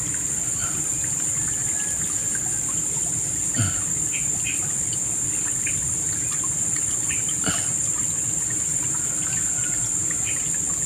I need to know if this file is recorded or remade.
recorded